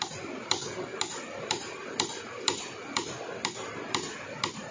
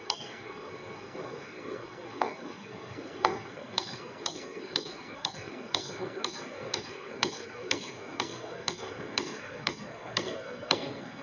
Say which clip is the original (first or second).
first